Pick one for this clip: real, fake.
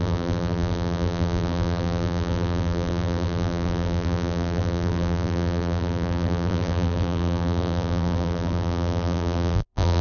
fake